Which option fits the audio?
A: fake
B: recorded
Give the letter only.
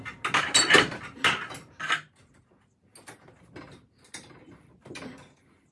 B